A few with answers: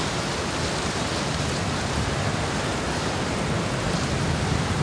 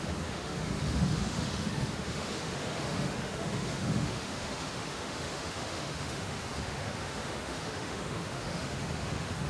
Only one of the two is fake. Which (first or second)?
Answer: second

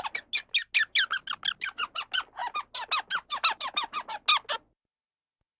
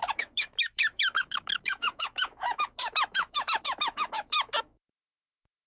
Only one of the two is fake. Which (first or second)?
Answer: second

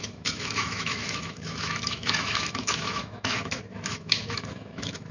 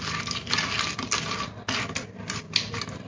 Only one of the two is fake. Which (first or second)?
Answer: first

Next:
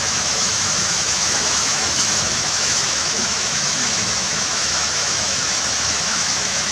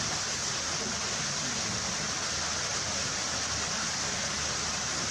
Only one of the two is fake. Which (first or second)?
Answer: first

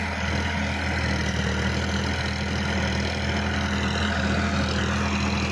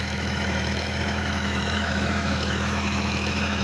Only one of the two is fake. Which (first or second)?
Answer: second